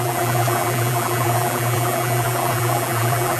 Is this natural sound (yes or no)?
no